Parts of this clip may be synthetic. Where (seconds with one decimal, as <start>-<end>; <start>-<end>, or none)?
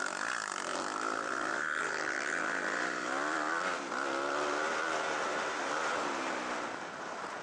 none